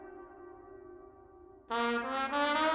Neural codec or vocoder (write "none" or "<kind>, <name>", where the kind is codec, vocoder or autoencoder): none